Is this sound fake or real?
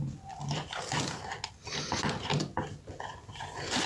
real